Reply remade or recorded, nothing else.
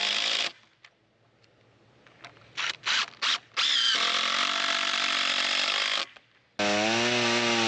recorded